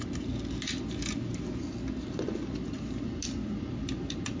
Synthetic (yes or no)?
no